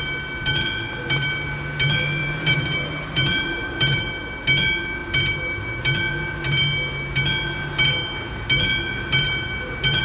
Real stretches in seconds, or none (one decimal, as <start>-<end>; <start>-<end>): 0.0-2.2; 4.1-10.0